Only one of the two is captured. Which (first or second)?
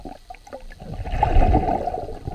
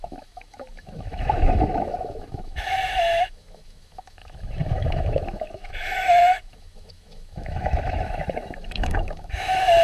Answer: first